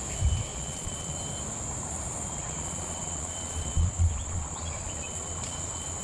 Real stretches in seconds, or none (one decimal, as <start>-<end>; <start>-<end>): 0.0-0.5; 1.2-2.3